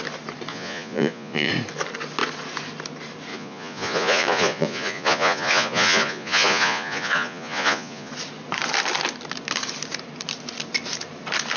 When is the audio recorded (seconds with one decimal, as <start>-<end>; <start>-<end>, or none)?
0.0-0.5; 1.5-3.3; 8.1-11.6